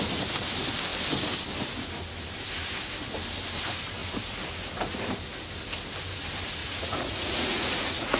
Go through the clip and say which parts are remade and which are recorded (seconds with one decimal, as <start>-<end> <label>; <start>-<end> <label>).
0.0-6.6 recorded; 6.6-8.2 remade